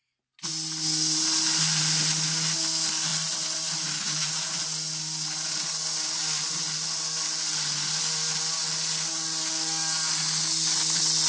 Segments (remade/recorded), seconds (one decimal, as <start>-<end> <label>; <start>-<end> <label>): 0.0-11.3 recorded